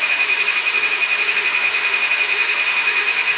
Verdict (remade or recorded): remade